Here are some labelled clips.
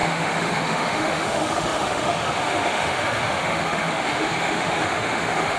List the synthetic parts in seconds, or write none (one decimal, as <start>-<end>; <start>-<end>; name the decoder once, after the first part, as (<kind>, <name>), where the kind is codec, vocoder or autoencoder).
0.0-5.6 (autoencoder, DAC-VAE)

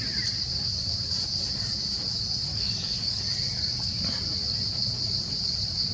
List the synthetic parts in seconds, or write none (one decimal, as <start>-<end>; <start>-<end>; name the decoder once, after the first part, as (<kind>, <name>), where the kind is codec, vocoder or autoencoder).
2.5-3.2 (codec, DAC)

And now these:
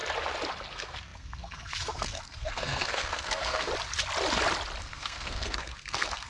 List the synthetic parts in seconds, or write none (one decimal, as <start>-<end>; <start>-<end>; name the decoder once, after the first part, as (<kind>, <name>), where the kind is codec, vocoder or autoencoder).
0.7-3.7 (codec, SNAC); 4.8-6.3

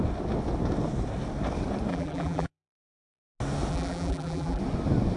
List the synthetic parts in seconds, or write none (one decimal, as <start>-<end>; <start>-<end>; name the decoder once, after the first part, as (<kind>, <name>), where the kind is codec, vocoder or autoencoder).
1.9-3.2 (vocoder, BigVGAN v2); 3.7-4.6